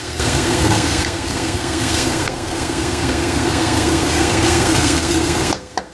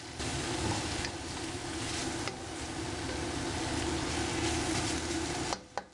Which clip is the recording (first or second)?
second